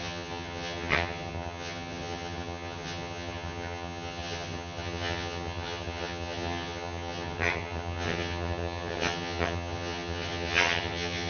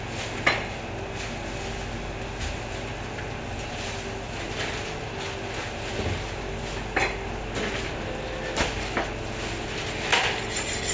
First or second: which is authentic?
second